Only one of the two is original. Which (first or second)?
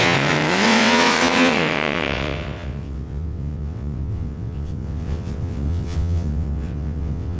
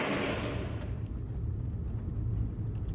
second